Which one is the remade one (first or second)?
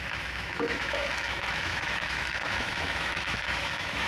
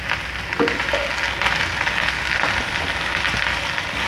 first